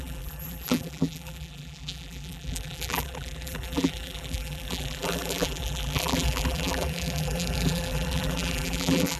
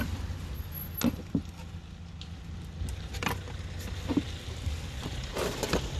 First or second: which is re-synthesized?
first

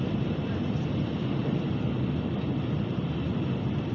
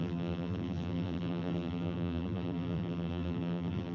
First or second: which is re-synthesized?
second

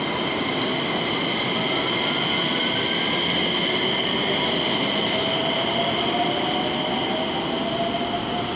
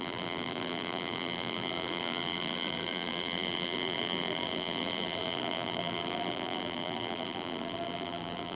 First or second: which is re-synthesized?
second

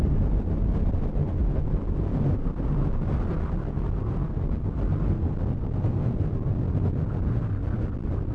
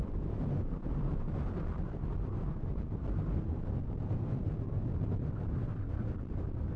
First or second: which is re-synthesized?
second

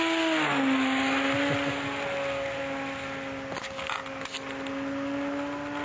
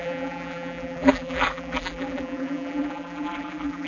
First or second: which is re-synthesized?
second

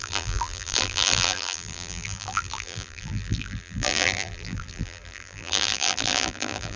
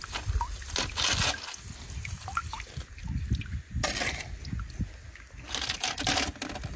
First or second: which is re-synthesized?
first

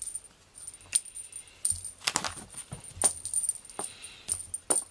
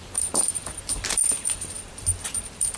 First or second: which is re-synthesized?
second